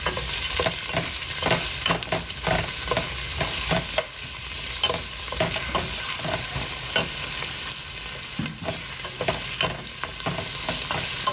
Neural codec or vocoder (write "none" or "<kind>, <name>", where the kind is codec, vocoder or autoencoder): none